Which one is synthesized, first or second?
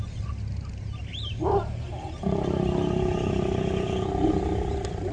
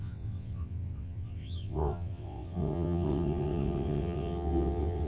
second